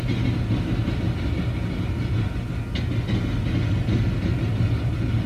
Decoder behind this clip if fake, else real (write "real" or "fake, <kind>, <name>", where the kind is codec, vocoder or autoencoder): real